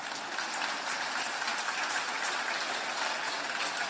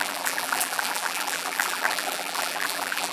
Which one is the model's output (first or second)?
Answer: second